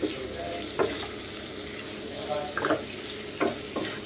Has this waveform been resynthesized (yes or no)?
no